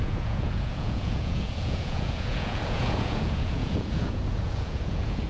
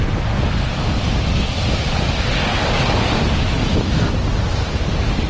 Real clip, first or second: second